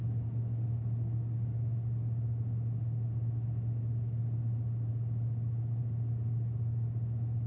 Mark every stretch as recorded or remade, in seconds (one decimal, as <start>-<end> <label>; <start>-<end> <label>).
0.0-7.5 recorded